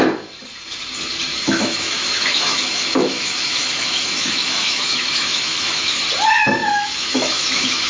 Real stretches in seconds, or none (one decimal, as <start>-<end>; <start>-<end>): 0.0-1.3; 6.0-6.6